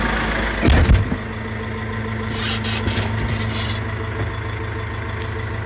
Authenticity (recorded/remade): recorded